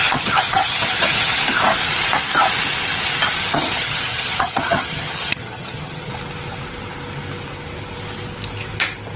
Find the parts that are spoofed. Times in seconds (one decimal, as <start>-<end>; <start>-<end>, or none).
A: 0.0-1.4; 3.4-6.1